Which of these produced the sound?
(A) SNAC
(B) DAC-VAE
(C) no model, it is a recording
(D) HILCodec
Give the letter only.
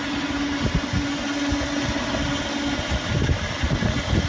C